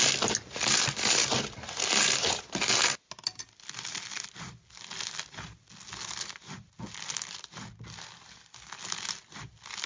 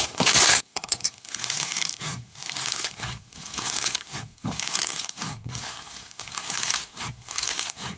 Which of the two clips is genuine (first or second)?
first